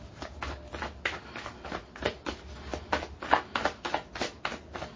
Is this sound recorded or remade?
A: recorded